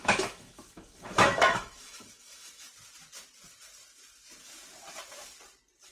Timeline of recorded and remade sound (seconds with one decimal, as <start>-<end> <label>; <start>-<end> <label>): 0.0-2.7 remade; 2.7-5.9 recorded